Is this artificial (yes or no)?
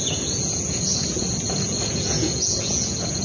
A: yes